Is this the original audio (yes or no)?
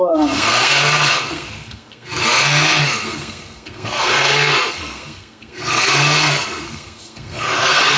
no